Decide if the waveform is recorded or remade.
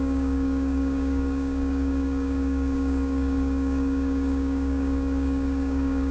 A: remade